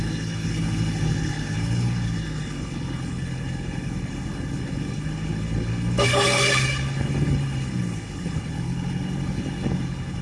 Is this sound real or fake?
fake